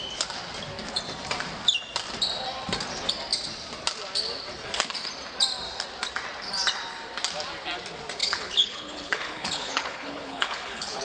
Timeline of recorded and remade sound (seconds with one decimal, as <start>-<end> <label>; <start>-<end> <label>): 0.0-8.2 recorded; 8.2-11.0 remade